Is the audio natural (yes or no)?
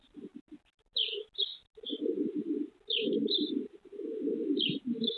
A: yes